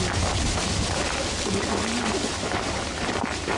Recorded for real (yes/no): yes